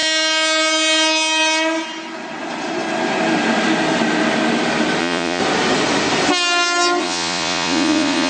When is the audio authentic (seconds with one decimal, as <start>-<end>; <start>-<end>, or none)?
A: 0.0-5.0; 5.4-7.0